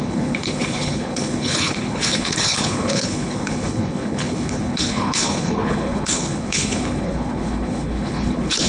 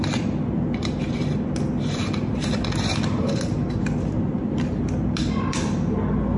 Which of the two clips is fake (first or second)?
first